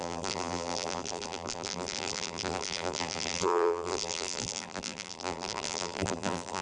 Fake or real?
fake